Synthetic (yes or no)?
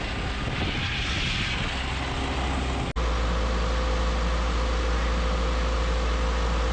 no